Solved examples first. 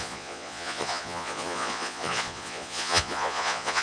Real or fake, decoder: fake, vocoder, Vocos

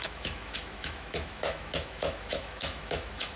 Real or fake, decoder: fake, autoencoder, DAC-VAE